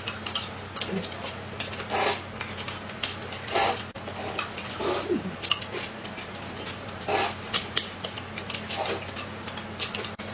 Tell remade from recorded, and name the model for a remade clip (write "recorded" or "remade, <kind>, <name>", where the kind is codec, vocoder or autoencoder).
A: recorded